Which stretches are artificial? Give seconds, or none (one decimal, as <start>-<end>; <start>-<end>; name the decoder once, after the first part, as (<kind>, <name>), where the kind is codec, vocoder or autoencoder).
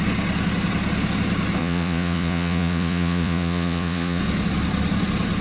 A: 1.6-4.2 (vocoder, Vocos)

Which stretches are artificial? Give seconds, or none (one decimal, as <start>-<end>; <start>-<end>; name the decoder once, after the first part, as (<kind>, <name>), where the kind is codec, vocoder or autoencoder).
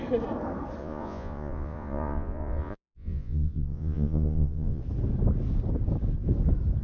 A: 0.8-4.8 (vocoder, Vocos)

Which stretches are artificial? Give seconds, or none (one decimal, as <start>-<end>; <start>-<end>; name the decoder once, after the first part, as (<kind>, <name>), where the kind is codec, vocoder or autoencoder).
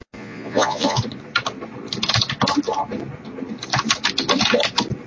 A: 0.0-1.0 (vocoder, Vocos)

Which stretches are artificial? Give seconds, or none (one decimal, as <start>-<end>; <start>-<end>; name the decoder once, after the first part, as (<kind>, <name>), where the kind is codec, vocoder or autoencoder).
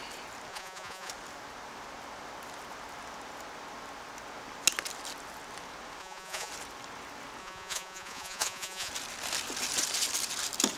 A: 0.5-1.1 (vocoder, Vocos); 6.0-6.5; 7.4-8.9